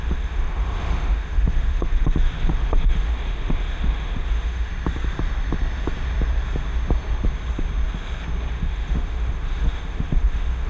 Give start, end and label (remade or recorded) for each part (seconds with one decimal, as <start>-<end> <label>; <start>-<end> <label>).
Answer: 0.0-4.7 remade; 4.7-8.5 recorded; 8.5-10.7 remade